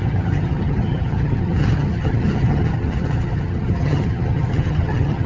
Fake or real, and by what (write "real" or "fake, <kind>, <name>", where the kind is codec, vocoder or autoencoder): fake, vocoder, HiFi-GAN